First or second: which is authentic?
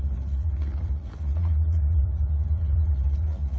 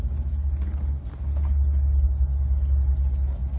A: second